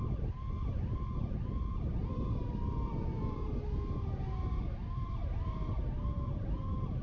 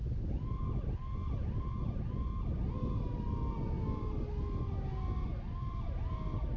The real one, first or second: second